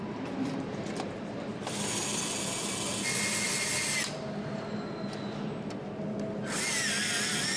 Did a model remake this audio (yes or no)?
no